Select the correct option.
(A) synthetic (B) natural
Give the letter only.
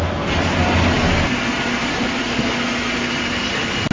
B